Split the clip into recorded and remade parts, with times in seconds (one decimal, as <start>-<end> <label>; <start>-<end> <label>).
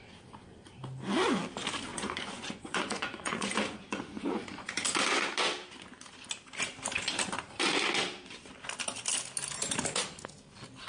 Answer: 0.0-1.9 recorded; 1.9-4.7 remade; 4.7-10.9 recorded